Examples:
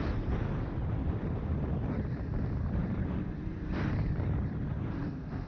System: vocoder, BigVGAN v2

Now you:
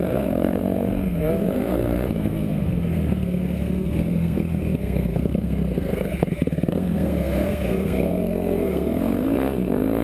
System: codec, SNAC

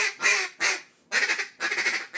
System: none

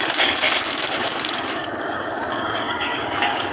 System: codec, DAC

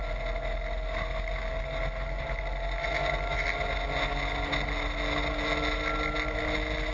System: none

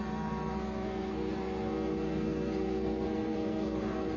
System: codec, SNAC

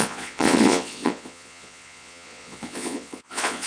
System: vocoder, Vocos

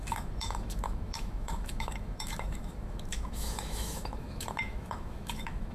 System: autoencoder, DAC-VAE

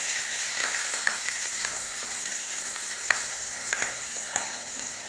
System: codec, SNAC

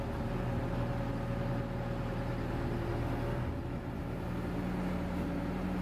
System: none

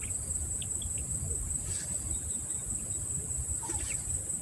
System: none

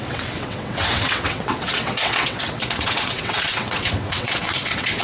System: vocoder, WaveNeXt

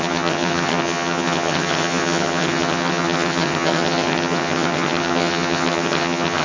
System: vocoder, HiFi-GAN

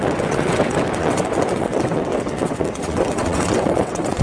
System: vocoder, WaveNeXt